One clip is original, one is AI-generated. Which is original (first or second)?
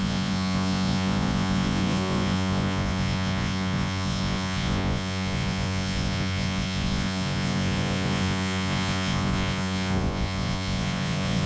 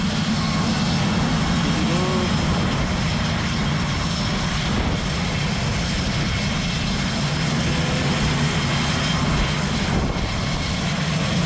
second